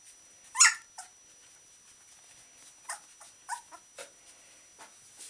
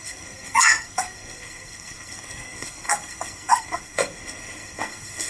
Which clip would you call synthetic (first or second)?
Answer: second